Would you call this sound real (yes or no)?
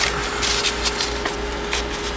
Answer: yes